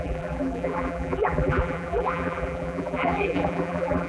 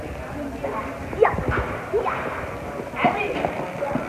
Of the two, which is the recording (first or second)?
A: second